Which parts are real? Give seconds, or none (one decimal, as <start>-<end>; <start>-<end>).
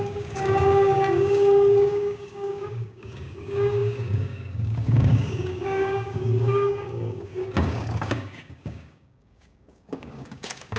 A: none